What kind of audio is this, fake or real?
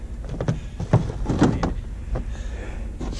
real